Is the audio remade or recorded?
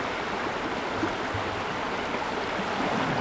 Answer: recorded